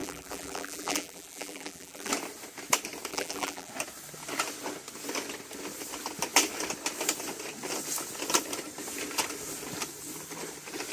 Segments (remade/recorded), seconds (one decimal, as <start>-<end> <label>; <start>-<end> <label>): 0.0-2.1 remade; 2.1-3.1 recorded; 3.1-3.7 remade; 3.7-10.9 recorded